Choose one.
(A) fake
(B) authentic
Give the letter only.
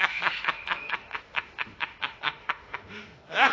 A